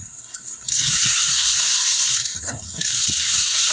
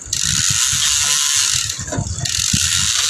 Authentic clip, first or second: second